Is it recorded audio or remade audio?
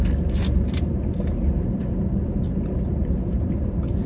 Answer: recorded